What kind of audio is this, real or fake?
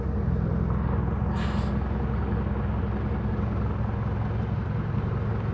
real